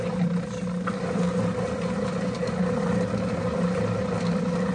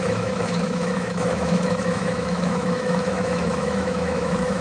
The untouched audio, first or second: first